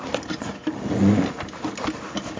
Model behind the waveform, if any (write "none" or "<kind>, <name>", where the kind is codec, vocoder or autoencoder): none